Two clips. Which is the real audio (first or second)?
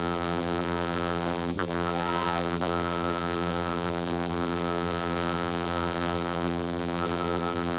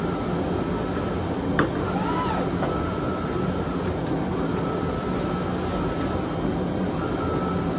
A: second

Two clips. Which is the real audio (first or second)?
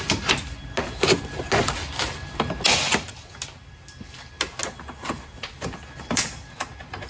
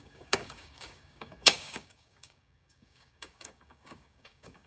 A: first